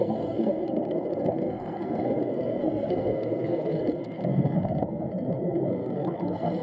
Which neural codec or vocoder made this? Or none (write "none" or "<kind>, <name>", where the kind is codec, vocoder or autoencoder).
codec, SNAC